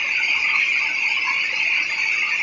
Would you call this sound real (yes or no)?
yes